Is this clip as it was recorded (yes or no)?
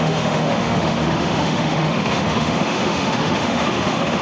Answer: no